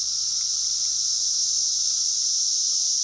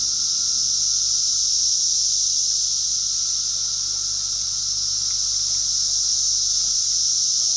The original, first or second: second